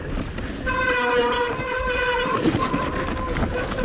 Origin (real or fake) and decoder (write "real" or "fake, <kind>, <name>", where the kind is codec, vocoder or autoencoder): real